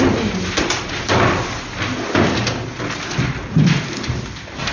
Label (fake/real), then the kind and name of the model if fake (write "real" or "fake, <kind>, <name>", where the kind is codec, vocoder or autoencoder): real